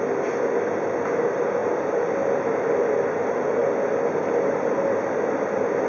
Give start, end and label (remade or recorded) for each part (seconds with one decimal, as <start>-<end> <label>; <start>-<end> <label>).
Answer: 0.0-1.6 recorded; 1.6-2.8 remade; 2.8-5.9 recorded